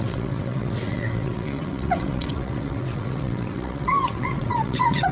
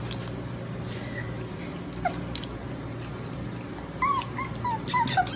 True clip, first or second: second